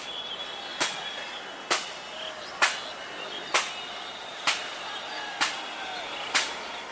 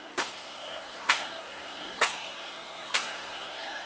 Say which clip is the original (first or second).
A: first